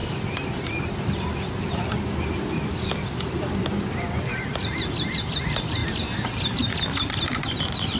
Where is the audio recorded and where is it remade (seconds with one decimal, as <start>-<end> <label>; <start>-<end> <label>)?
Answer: 0.0-0.5 recorded; 0.5-4.6 remade; 4.6-5.2 recorded; 5.2-5.8 remade; 5.8-7.4 recorded; 7.4-8.0 remade